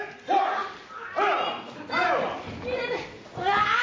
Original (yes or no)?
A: yes